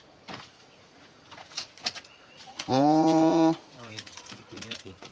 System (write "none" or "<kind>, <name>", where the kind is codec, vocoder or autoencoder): vocoder, Vocos